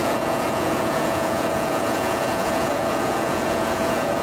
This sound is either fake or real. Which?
fake